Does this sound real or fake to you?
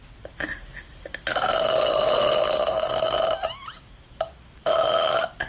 real